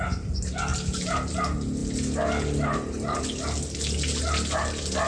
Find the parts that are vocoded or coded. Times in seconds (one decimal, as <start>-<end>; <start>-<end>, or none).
none